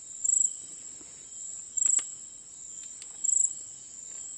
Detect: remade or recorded recorded